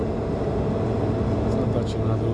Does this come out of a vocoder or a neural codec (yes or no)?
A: no